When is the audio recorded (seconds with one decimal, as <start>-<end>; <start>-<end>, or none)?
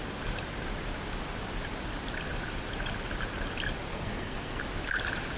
0.0-3.9; 4.6-5.4